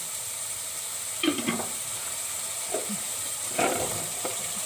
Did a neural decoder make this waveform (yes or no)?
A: yes